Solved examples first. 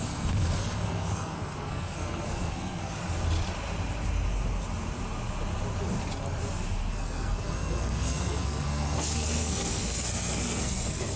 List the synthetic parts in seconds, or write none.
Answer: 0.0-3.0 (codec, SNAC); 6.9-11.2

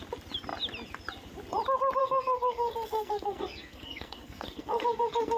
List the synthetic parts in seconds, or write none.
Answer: 2.0-5.4 (codec, SNAC)

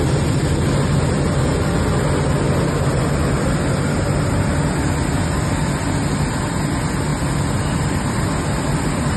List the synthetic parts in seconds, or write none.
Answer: none

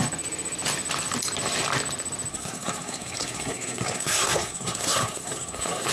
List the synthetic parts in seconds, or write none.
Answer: 2.3-5.9 (codec, SNAC)

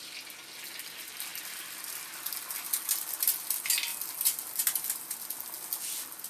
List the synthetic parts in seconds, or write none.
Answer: none

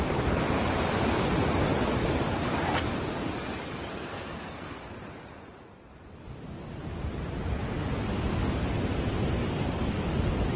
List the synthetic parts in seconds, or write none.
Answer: 3.9-4.8 (codec, SNAC)

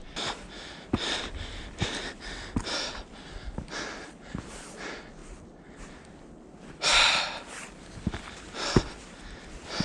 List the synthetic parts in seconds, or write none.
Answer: none